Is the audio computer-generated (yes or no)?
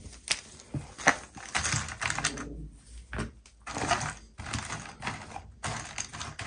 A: no